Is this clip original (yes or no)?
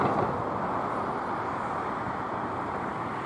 yes